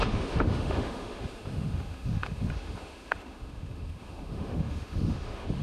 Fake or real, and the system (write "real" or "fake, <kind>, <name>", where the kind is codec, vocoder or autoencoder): fake, autoencoder, DAC-VAE